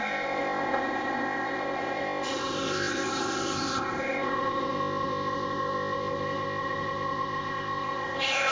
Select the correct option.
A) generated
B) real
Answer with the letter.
A